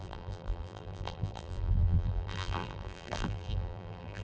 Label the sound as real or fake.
fake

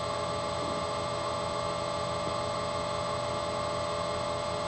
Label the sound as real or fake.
real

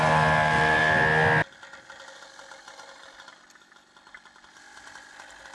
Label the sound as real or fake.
real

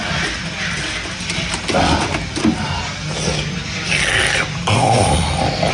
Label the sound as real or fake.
real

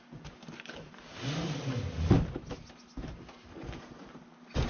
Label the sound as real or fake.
real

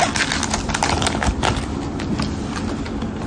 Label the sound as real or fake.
real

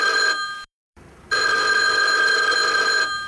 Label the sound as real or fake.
fake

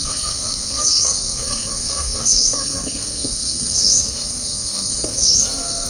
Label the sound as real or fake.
fake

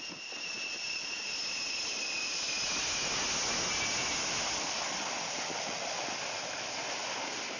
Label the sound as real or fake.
real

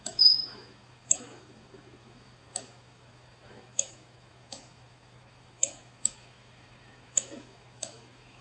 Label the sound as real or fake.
fake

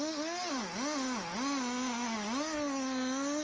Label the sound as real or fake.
real